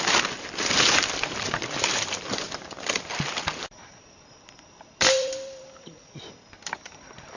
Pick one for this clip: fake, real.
fake